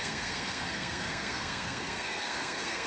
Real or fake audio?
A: fake